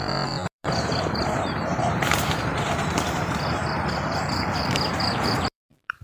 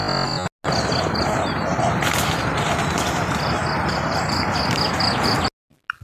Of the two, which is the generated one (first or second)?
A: first